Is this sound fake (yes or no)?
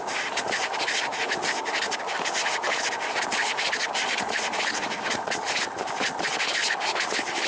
no